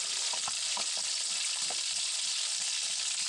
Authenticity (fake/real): real